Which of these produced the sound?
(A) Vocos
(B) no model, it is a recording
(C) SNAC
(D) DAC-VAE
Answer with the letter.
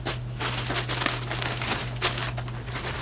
B